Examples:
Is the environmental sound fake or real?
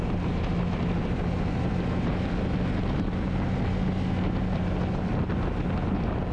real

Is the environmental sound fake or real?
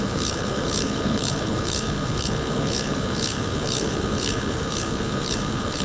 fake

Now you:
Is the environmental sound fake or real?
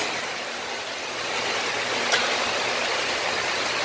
real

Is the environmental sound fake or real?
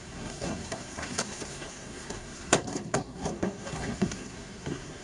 fake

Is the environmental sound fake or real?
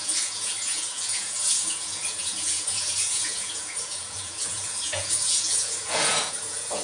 fake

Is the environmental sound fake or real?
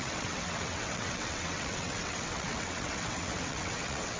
fake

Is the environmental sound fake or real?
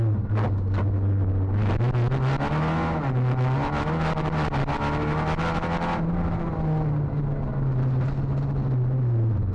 real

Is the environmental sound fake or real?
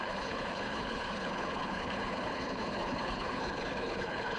fake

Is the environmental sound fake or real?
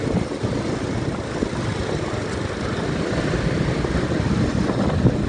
real